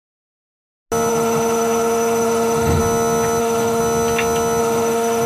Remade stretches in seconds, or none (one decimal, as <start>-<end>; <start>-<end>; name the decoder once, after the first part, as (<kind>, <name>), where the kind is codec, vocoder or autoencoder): 1.1-2.8 (autoencoder, DAC-VAE); 3.4-3.8; 4.6-5.3